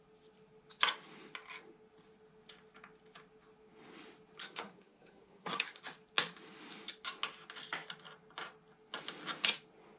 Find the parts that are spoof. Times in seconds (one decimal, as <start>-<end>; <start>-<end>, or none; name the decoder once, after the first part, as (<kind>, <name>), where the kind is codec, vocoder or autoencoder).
4.4-5.8 (codec, SNAC)